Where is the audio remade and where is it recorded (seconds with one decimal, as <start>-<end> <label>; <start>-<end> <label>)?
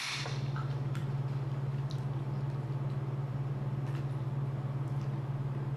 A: 0.0-5.8 recorded